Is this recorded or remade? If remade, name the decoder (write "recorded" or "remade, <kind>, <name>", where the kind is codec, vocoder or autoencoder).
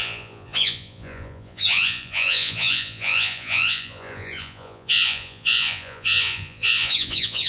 remade, vocoder, Vocos